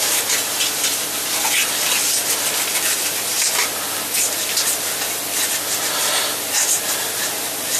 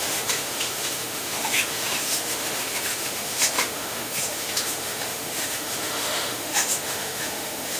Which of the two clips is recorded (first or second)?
first